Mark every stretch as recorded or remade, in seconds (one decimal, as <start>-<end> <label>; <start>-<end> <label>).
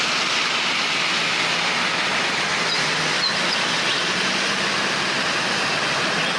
0.0-6.4 recorded